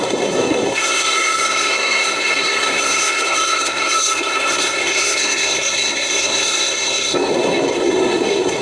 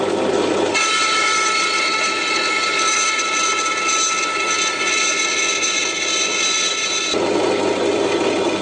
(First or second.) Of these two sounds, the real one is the second